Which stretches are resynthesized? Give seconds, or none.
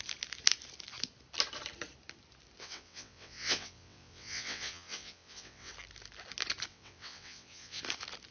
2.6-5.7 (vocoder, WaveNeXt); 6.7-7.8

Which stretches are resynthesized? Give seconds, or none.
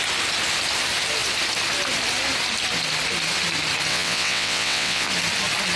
3.9-5.1 (vocoder, WaveNeXt)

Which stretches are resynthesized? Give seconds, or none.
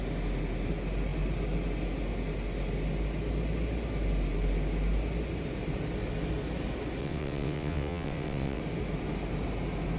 7.0-8.6 (vocoder, WaveNeXt)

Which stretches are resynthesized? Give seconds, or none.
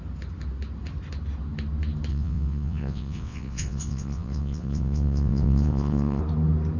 2.1-6.2 (vocoder, WaveNeXt)